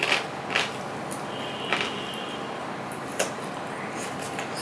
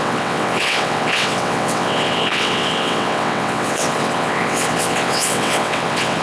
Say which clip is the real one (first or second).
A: first